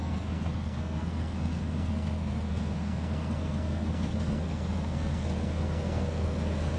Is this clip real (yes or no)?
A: no